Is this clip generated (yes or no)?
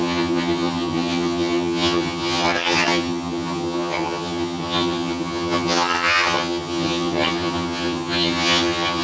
yes